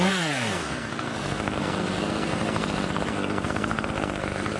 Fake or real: fake